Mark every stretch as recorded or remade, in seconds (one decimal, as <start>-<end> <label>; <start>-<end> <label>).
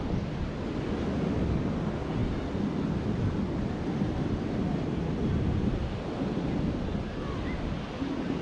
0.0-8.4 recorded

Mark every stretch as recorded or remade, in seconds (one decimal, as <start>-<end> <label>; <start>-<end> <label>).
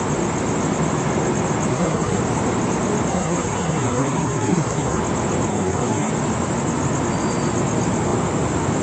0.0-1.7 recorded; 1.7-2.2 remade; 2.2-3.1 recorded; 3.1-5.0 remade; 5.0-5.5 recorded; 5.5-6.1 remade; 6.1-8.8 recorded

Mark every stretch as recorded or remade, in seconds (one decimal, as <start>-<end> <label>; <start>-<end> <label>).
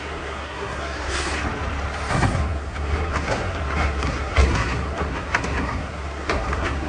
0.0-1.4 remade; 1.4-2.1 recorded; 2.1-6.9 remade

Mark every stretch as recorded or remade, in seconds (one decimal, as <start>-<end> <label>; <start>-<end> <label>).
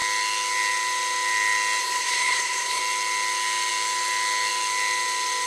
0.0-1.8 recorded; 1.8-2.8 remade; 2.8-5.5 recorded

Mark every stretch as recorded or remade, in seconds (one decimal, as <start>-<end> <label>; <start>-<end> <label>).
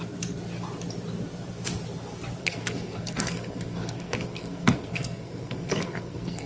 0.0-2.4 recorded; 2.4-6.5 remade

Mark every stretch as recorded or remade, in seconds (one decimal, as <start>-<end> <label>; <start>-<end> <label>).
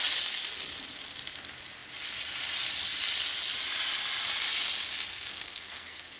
0.0-5.1 recorded; 5.1-6.2 remade